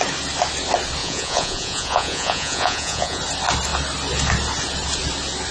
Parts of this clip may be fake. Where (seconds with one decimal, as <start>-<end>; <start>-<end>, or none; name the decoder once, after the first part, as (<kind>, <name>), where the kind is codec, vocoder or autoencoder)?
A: 1.0-3.2 (vocoder, Vocos)